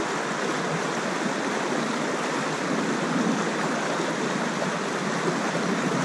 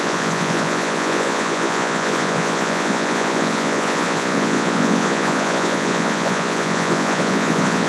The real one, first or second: first